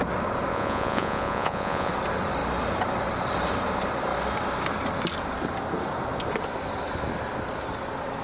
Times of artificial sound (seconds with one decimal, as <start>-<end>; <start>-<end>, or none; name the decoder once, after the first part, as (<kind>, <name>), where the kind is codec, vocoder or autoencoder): 0.5-1.9 (vocoder, Vocos)